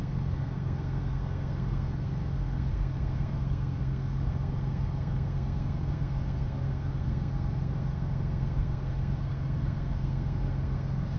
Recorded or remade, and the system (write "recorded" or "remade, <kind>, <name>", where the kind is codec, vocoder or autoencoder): remade, codec, SNAC